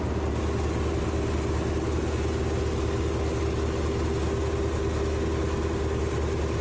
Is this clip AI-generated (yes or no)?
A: no